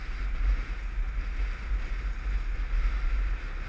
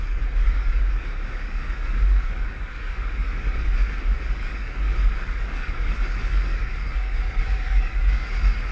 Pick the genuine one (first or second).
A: first